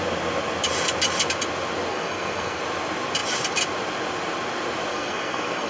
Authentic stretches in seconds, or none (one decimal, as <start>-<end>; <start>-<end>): 0.0-1.9; 2.6-4.9